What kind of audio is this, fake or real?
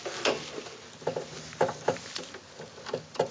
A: real